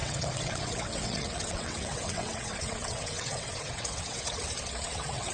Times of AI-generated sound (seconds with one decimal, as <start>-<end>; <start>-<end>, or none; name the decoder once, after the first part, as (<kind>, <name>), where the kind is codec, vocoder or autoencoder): 0.0-5.3 (vocoder, WaveNeXt)